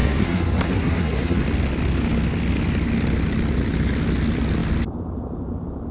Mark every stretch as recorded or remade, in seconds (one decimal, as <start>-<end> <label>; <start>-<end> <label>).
0.0-1.4 remade; 1.4-5.9 recorded